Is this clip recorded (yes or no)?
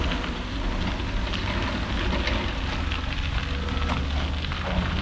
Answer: yes